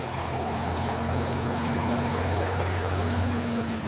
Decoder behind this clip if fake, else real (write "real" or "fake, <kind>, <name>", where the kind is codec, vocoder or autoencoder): fake, codec, HILCodec